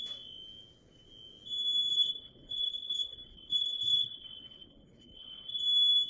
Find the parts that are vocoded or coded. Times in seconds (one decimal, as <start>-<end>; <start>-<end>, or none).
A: 1.9-5.6